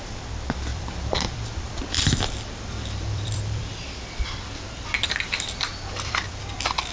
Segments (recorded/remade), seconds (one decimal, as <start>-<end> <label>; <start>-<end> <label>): 0.0-0.7 recorded; 0.7-3.6 remade; 3.6-5.7 recorded; 5.7-6.4 remade; 6.4-6.9 recorded